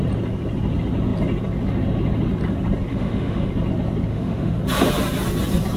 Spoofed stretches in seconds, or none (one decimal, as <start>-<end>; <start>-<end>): 2.9-3.5; 4.1-4.6